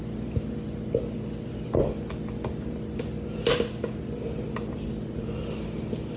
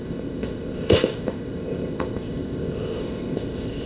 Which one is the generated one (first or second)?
second